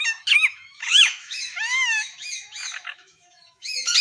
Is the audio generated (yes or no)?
yes